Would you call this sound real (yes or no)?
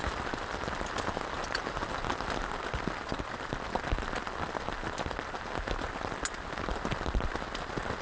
yes